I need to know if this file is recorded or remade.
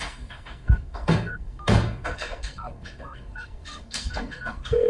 remade